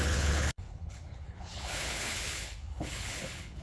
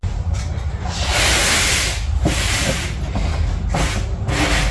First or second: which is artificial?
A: first